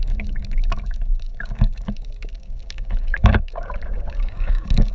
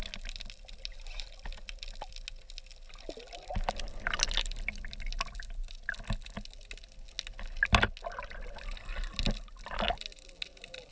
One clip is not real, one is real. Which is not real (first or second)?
first